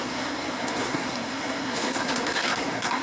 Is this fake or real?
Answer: fake